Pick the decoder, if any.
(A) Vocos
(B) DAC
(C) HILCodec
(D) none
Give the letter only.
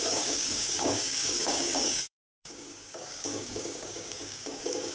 B